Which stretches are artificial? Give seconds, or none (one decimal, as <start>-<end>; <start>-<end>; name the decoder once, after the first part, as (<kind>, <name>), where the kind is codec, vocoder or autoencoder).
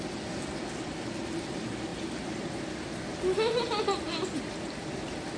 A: none